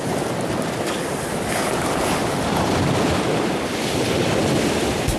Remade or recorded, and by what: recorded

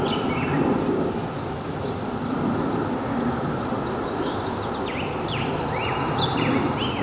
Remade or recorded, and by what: recorded